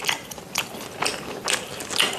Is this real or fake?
real